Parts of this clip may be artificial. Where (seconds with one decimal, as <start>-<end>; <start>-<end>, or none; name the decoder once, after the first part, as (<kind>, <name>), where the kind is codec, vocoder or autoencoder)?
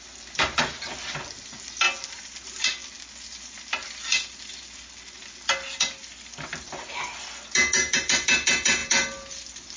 none